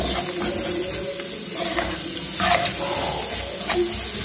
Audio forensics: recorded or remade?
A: recorded